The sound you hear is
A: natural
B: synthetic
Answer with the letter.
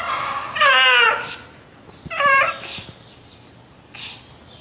A